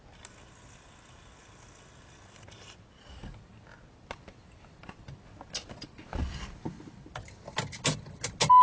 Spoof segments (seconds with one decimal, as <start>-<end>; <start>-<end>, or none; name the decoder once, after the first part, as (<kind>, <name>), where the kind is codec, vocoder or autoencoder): none